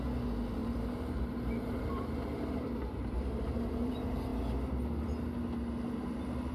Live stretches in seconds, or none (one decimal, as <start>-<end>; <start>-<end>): 0.0-0.6; 3.9-6.5